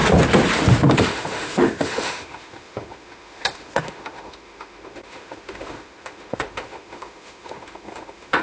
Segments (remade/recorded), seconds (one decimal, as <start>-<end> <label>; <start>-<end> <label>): 0.0-1.0 recorded; 1.0-8.4 remade

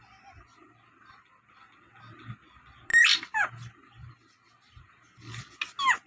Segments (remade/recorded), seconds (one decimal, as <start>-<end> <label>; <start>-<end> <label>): 0.0-2.9 recorded; 2.9-5.4 remade; 5.4-6.1 recorded